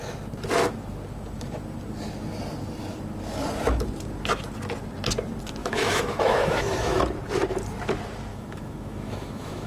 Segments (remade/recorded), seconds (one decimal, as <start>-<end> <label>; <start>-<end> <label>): 0.0-5.6 recorded; 5.6-7.0 remade; 7.0-8.3 recorded; 8.3-9.7 remade